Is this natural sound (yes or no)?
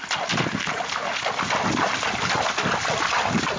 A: yes